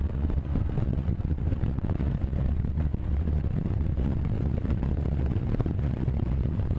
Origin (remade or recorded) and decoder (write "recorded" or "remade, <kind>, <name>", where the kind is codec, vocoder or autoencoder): remade, vocoder, WaveNeXt